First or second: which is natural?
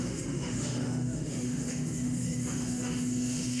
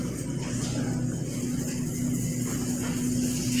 second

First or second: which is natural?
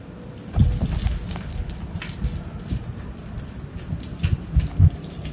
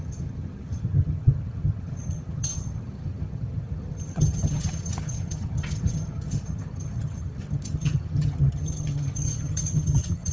first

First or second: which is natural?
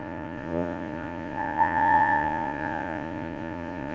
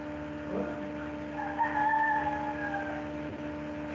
second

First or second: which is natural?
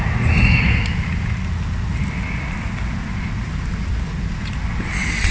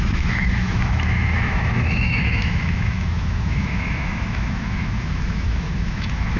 first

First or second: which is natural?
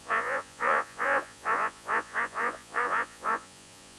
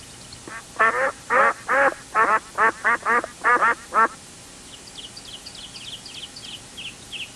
second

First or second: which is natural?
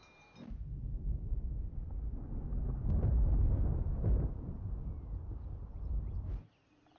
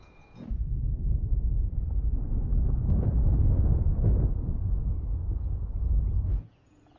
first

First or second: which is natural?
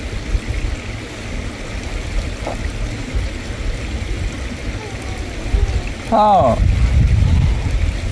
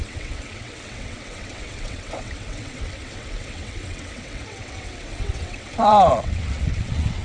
first